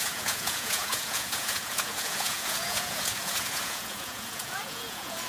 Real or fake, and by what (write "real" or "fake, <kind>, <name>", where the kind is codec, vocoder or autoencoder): fake, vocoder, Vocos